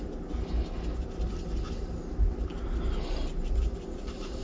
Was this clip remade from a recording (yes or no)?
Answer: no